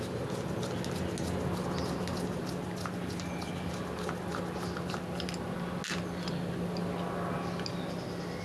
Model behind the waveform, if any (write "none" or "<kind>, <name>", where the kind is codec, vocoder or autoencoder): none